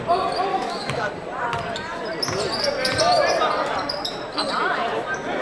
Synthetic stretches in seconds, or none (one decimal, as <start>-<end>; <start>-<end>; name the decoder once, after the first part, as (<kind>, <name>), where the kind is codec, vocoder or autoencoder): 0.5-1.1 (autoencoder, DAC-VAE)